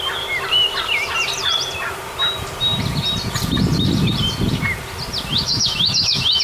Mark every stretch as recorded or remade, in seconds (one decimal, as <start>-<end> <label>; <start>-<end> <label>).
0.0-5.3 recorded; 5.3-6.4 remade